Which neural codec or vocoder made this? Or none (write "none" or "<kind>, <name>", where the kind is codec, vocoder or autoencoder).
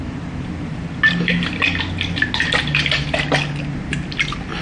none